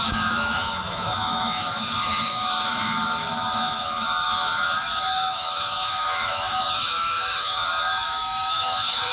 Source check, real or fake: fake